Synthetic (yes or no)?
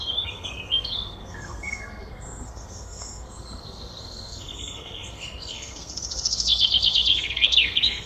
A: yes